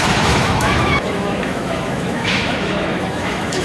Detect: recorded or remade remade